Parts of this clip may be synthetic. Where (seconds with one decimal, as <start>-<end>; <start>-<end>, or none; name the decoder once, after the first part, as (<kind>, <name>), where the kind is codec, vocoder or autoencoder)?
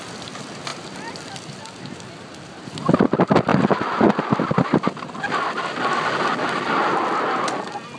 none